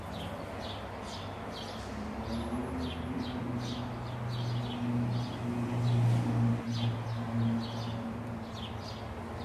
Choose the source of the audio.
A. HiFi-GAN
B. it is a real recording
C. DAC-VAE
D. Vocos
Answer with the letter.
B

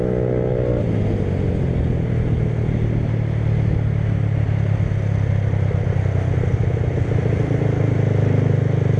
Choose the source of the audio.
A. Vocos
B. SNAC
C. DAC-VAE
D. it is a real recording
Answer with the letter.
D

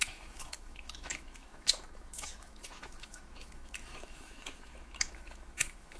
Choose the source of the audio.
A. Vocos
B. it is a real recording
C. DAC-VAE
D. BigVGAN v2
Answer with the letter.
C